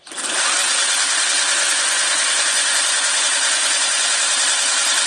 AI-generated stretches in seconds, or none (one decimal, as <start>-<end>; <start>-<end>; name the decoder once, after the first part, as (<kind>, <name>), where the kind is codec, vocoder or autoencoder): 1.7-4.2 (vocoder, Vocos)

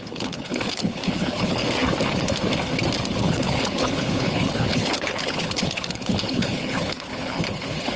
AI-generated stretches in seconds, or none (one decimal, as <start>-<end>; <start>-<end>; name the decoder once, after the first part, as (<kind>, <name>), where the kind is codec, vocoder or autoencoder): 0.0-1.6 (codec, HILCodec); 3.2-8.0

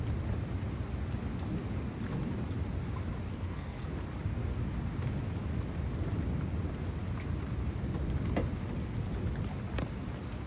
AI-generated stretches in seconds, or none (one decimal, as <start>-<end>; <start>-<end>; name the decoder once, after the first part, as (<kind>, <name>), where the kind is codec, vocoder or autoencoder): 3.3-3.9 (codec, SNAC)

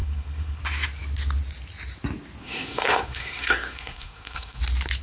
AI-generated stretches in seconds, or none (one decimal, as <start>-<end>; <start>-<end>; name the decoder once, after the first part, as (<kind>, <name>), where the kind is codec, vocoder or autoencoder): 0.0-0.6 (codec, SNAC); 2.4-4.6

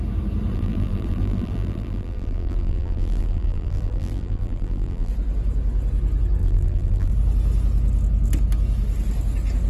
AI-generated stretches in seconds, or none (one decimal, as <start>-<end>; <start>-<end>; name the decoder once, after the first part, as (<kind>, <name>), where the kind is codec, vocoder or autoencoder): 0.5-5.1 (vocoder, BigVGAN v2); 6.4-7.1

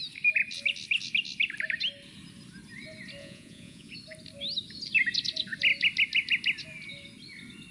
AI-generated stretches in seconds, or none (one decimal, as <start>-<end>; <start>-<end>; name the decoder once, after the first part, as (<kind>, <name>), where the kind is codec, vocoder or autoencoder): 3.2-3.9 (vocoder, Vocos)

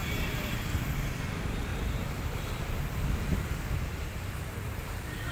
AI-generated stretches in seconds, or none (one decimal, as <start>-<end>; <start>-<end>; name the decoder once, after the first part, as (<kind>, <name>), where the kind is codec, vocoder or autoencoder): 0.0-0.8 (vocoder, BigVGAN v2); 1.7-5.3